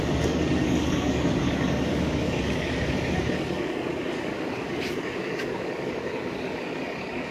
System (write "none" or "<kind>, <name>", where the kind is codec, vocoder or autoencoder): codec, DAC